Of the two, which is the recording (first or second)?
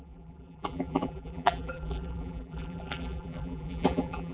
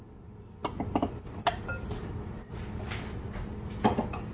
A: second